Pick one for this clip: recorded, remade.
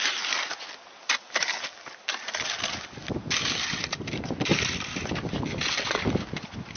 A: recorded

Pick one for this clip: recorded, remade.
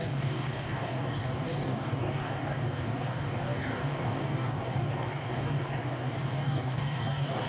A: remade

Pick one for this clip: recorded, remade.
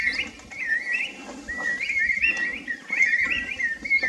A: recorded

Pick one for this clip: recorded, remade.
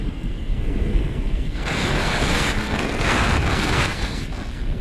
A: remade